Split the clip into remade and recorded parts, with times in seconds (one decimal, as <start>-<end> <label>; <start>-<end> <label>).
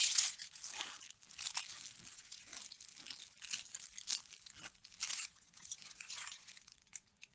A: 0.0-0.6 remade; 0.6-2.1 recorded; 2.1-2.5 remade; 2.5-5.1 recorded; 5.1-7.3 remade